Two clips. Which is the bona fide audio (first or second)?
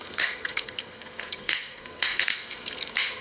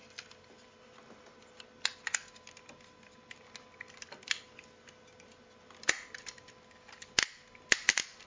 second